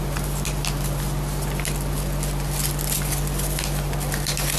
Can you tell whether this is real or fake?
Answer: real